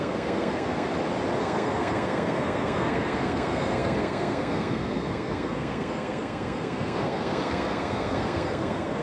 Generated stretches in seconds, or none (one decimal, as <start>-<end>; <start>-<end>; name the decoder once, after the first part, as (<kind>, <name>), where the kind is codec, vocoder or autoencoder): 0.0-0.9 (codec, SNAC); 1.4-9.0